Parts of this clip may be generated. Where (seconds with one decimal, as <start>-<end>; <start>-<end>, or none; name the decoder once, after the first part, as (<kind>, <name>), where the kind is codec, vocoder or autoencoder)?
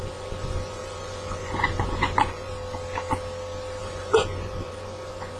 0.0-2.5 (vocoder, Vocos); 3.8-5.4